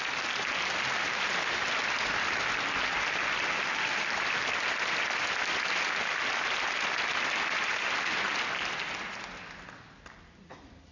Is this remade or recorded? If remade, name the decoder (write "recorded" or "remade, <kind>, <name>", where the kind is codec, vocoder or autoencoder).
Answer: recorded